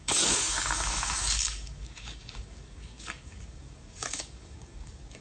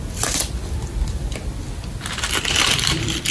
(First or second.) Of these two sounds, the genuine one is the second